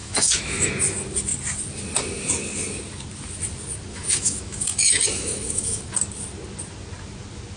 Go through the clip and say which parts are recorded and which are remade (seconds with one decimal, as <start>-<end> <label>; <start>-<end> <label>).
0.0-0.7 remade; 0.7-3.9 recorded; 3.9-5.8 remade; 5.8-7.6 recorded

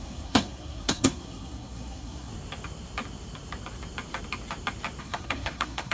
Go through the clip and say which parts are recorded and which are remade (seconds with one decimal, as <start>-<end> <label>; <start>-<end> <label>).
0.0-2.3 remade; 2.3-5.0 recorded; 5.0-5.9 remade

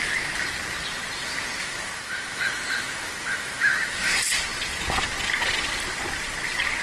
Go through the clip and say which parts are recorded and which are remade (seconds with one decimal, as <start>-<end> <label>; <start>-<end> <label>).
0.0-1.6 recorded; 1.6-4.1 remade; 4.1-6.8 recorded

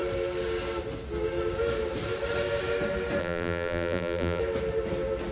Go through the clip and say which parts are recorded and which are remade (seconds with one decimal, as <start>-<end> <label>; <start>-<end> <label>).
0.0-3.2 recorded; 3.2-4.4 remade; 4.4-5.3 recorded

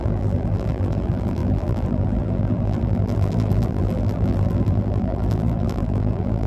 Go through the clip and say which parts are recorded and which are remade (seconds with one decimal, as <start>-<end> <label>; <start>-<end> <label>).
0.0-6.5 remade